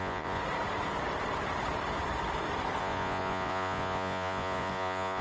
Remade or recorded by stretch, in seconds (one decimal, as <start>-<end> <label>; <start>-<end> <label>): 0.0-0.4 remade; 0.4-2.8 recorded; 2.8-5.2 remade